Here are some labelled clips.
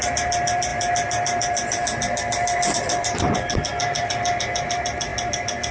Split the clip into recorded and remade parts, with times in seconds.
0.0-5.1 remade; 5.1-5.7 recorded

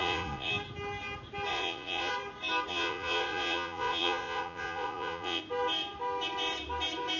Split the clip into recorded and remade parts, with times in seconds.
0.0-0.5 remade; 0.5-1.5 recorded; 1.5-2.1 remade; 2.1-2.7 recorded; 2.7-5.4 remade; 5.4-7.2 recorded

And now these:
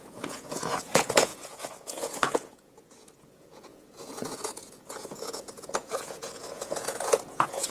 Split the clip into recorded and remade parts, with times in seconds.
0.0-7.7 remade